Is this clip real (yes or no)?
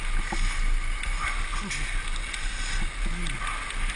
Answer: yes